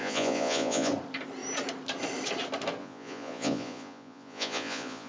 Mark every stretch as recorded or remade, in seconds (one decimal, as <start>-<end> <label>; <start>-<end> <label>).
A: 0.0-0.9 remade; 0.9-2.8 recorded; 2.8-5.1 remade